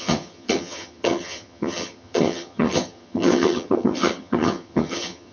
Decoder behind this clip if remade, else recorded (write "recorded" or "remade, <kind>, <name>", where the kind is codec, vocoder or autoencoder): remade, vocoder, HiFi-GAN